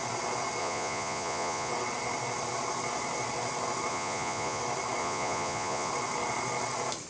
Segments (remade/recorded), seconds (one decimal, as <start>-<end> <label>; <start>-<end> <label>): 0.0-0.6 recorded; 0.6-1.7 remade; 1.7-3.9 recorded; 3.9-4.6 remade; 4.6-5.0 recorded; 5.0-5.9 remade; 5.9-7.1 recorded